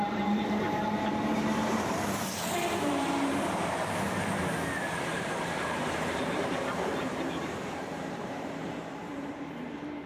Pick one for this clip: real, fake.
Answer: fake